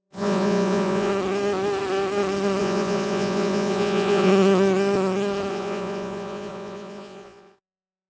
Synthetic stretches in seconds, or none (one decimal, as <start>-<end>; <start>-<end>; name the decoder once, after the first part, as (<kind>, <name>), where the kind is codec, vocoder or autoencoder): 0.0-1.1 (vocoder, Vocos); 2.6-4.3; 5.5-8.1